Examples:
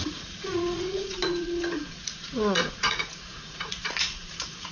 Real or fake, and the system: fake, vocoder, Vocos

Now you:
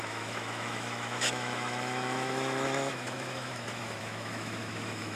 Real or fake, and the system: fake, autoencoder, DAC-VAE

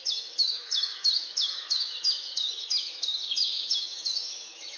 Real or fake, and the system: fake, autoencoder, DAC-VAE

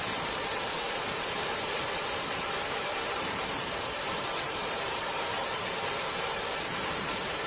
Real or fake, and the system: fake, vocoder, BigVGAN v2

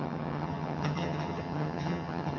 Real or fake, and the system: fake, vocoder, HiFi-GAN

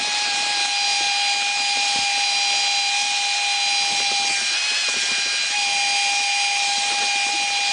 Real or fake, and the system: real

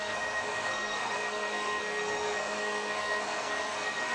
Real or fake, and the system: fake, codec, SNAC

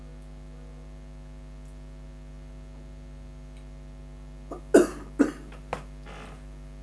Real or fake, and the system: real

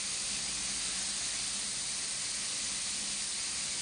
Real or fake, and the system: real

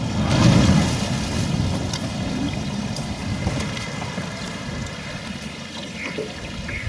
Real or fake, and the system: real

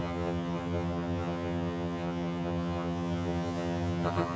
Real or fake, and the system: fake, vocoder, HiFi-GAN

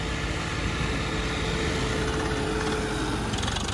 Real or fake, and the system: real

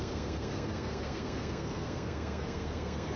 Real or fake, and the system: fake, codec, SNAC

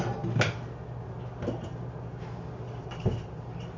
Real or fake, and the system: real